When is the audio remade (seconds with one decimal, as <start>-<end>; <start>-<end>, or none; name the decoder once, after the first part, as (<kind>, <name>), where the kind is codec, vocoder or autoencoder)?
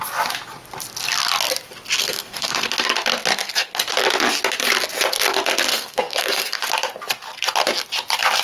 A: 2.0-2.7 (codec, SNAC); 3.3-3.8; 5.7-6.6